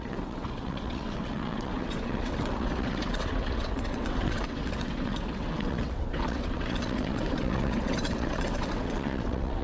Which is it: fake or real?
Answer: fake